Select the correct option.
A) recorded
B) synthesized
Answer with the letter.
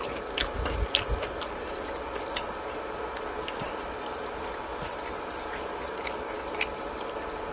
B